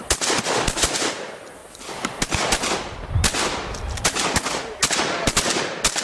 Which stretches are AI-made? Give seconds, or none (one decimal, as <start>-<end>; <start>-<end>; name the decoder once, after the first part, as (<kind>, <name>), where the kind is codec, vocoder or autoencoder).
none